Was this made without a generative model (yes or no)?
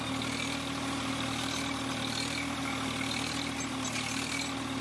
yes